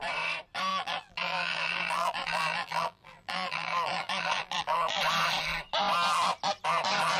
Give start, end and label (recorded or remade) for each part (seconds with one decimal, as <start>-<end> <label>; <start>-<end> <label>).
0.0-0.7 recorded; 0.7-5.0 remade; 5.0-7.2 recorded